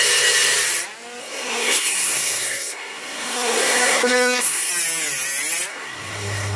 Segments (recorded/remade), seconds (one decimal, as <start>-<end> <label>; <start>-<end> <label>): 0.0-1.2 recorded; 1.2-4.7 remade; 4.7-5.7 recorded; 5.7-6.6 remade